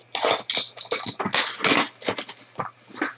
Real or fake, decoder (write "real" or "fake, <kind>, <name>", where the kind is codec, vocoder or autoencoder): real